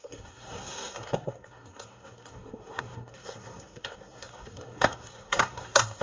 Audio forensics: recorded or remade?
remade